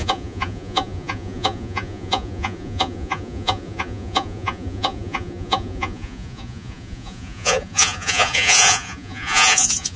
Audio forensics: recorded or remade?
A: remade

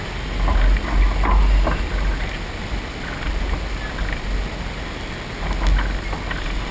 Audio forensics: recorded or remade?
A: recorded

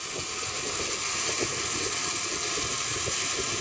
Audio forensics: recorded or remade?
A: recorded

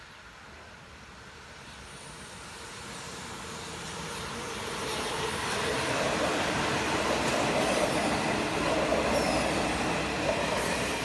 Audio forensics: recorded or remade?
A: recorded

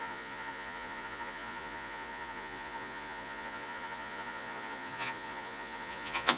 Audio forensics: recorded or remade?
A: remade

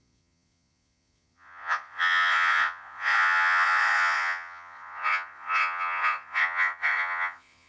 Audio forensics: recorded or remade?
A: remade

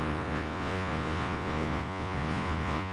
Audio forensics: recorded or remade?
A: remade